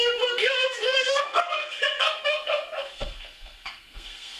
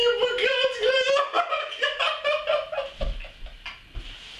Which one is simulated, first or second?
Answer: first